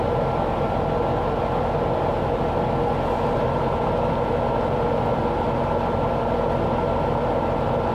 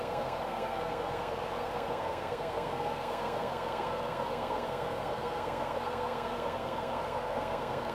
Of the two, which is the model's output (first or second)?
second